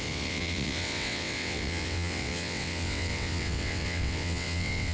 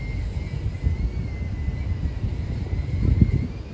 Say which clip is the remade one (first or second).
first